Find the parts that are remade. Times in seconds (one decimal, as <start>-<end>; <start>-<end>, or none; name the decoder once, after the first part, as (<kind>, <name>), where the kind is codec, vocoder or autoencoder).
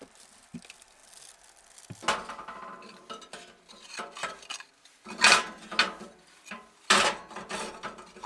none